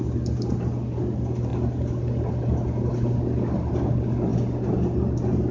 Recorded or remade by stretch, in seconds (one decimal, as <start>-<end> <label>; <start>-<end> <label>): 0.0-1.5 remade; 1.5-2.3 recorded; 2.3-4.3 remade; 4.3-5.5 recorded